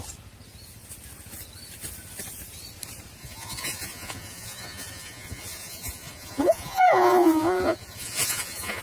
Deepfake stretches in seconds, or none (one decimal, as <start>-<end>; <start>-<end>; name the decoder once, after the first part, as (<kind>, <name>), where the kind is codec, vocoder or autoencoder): 3.2-8.8 (vocoder, Vocos)